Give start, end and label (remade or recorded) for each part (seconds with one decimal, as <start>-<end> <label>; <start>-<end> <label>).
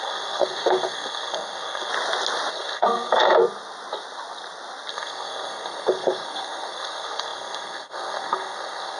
0.0-1.9 remade; 1.9-2.5 recorded; 2.5-3.4 remade; 3.4-4.9 recorded; 4.9-9.0 remade